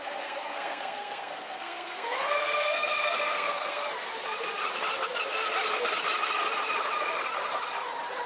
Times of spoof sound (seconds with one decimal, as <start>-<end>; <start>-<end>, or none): 0.0-3.8